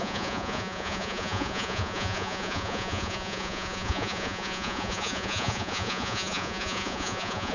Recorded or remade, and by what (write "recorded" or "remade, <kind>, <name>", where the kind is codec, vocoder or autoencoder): remade, vocoder, Vocos